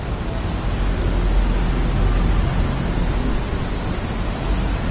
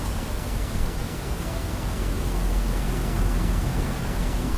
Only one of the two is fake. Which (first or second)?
second